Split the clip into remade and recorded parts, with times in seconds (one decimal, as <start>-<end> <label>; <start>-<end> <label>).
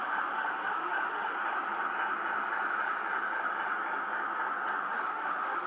0.0-1.4 remade; 1.4-4.8 recorded; 4.8-5.7 remade